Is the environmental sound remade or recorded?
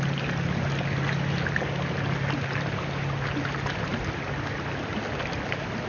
recorded